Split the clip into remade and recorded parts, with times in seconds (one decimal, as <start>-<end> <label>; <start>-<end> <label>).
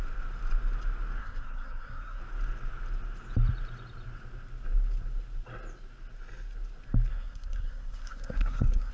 0.0-1.2 recorded; 1.2-2.2 remade; 2.2-7.1 recorded; 7.1-8.9 remade